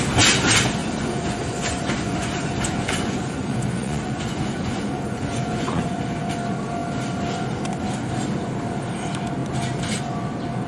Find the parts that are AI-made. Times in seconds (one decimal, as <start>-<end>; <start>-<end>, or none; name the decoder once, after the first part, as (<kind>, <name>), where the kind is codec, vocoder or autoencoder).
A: 0.8-6.0 (vocoder, Vocos)